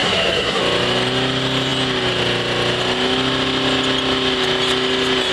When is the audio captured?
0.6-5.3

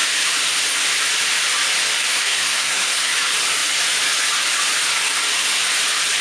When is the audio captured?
0.0-2.1; 3.1-6.2

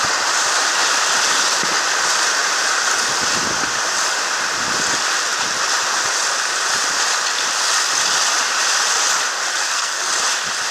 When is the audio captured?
0.0-9.6; 10.1-10.7

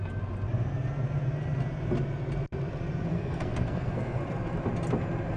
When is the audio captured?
0.0-3.1; 4.2-5.4

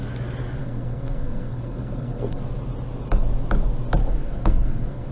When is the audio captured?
0.0-0.6; 2.4-4.0

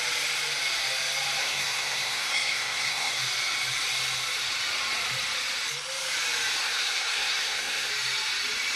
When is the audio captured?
0.0-1.4; 3.2-6.6; 7.9-8.8

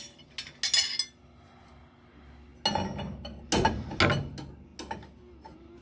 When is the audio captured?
0.0-5.8